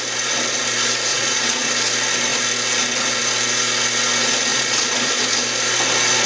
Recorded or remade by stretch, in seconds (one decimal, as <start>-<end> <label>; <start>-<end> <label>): 0.0-1.1 recorded; 1.1-1.7 remade; 1.7-4.5 recorded; 4.5-5.2 remade; 5.2-6.3 recorded